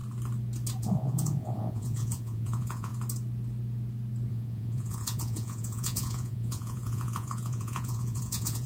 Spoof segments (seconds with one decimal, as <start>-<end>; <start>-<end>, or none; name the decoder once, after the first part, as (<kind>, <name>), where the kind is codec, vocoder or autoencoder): 0.8-2.9 (vocoder, Vocos); 4.3-8.7